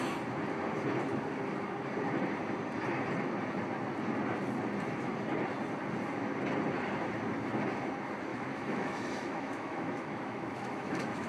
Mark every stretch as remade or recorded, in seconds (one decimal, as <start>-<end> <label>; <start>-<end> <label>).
0.0-8.3 recorded; 8.3-11.3 remade